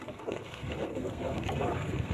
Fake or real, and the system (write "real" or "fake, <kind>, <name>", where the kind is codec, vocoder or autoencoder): fake, codec, SNAC